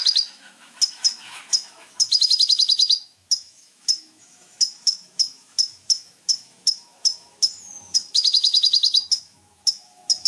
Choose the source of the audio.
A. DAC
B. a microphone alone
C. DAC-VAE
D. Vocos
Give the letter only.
C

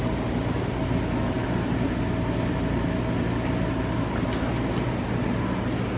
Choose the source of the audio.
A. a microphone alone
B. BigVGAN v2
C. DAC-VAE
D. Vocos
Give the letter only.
A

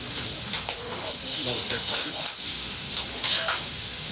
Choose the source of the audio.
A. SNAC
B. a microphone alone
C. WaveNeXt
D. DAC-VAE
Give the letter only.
D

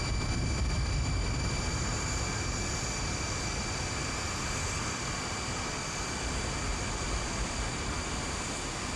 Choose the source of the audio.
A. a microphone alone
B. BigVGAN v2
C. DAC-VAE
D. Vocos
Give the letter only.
A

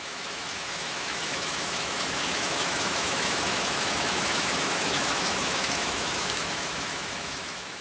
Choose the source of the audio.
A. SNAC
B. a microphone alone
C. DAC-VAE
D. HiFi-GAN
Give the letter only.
C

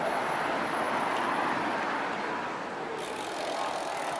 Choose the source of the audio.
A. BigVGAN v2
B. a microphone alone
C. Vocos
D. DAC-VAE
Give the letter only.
B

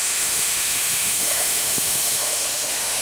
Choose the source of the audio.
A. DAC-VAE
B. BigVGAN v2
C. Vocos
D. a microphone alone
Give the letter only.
A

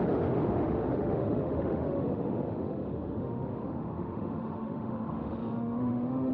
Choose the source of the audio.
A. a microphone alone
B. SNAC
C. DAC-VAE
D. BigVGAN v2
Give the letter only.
C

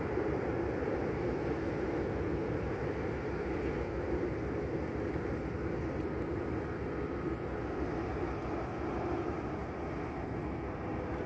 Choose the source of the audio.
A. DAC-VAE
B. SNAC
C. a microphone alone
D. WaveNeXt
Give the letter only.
C